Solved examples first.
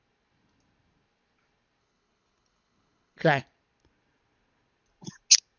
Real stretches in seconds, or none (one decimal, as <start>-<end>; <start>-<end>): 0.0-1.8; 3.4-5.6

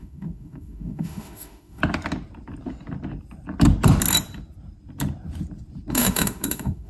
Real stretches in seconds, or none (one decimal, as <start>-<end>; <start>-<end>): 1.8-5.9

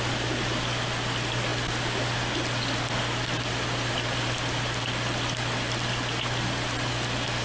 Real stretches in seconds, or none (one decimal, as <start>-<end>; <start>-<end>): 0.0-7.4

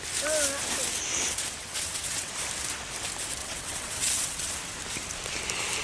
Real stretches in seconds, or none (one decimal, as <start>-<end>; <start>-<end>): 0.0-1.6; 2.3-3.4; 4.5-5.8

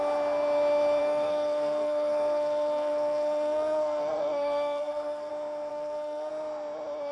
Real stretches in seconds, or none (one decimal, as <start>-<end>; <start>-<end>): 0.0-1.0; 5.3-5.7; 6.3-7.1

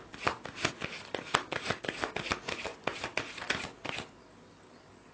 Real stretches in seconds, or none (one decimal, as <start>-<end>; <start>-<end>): 0.0-1.4; 2.1-5.1

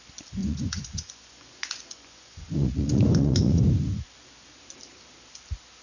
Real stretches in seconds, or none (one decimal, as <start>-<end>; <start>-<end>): 0.0-0.4; 3.6-5.8